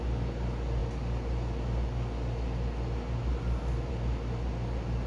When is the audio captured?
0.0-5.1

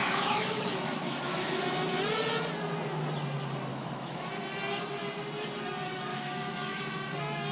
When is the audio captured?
1.6-3.7; 4.2-6.1; 6.8-7.5

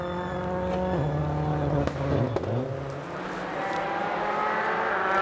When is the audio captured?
0.0-5.2